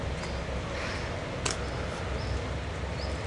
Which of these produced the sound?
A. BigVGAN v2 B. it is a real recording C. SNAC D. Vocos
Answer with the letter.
B